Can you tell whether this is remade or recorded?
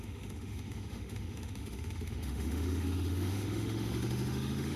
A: remade